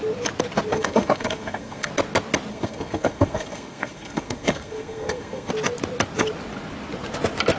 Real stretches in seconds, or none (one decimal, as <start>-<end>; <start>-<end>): 0.0-0.7; 1.9-2.5; 5.5-7.6